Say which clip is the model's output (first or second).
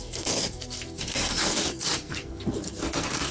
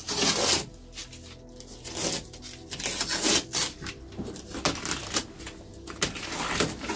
first